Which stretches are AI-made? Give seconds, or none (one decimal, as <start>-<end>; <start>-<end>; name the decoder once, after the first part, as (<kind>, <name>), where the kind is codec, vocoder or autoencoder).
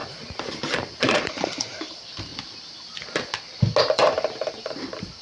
0.0-2.3 (vocoder, BigVGAN v2); 3.8-5.2